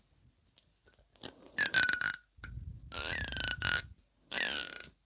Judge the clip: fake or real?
real